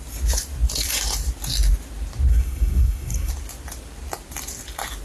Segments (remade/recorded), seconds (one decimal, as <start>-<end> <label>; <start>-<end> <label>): 0.0-2.3 recorded; 2.3-3.3 remade; 3.3-5.0 recorded